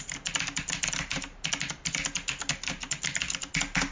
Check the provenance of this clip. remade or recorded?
recorded